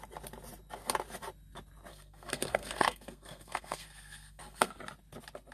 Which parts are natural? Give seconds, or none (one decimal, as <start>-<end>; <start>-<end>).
0.0-1.9; 4.8-5.5